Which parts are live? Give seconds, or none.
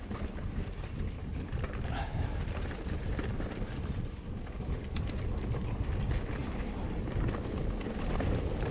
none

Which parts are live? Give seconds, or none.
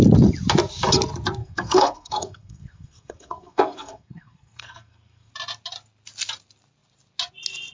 0.0-1.4; 5.3-7.7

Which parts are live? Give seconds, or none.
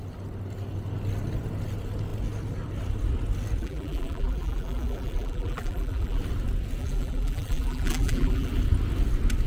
0.0-3.6; 6.2-6.8; 8.5-9.5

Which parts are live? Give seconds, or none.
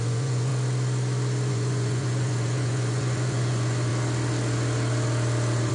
0.5-1.5; 3.9-5.7